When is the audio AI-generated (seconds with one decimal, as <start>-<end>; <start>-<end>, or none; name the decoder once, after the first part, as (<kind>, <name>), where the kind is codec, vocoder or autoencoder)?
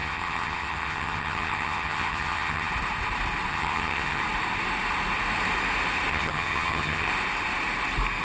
0.0-2.7 (vocoder, HiFi-GAN); 3.5-4.2; 6.1-7.1